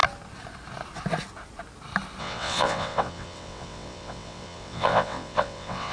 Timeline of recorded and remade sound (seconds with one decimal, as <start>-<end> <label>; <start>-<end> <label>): 0.0-2.2 recorded; 2.2-5.9 remade